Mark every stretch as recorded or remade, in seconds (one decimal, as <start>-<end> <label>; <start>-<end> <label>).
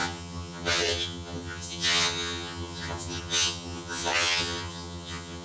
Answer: 0.0-5.4 remade